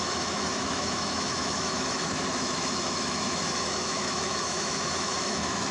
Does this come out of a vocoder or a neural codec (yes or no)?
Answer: yes